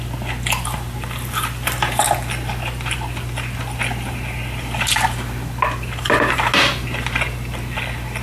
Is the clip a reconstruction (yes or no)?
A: no